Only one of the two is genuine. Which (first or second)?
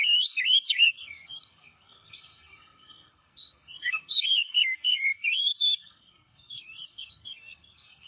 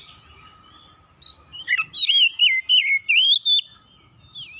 second